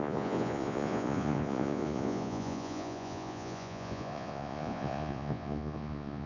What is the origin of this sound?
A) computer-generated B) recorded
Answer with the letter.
A